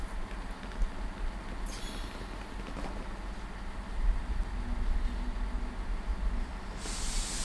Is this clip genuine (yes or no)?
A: yes